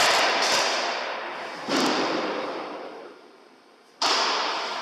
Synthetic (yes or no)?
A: yes